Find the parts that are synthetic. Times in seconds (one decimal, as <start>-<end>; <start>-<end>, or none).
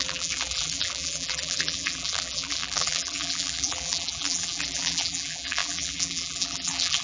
0.0-7.0